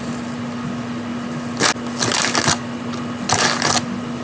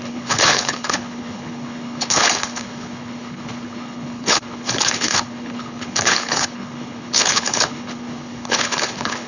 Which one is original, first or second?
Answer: first